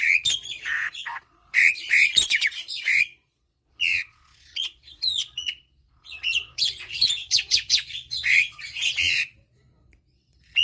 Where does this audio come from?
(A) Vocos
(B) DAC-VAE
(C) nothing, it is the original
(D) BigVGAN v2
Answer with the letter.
A